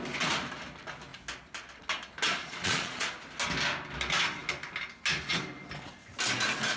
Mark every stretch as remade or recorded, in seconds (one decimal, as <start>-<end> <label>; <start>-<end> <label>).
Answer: 0.0-2.4 recorded; 2.4-3.1 remade; 3.1-6.8 recorded